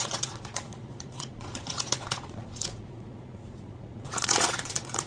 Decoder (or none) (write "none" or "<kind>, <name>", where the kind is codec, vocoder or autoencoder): vocoder, Vocos